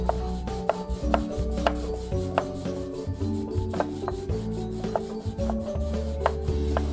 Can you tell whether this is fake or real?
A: real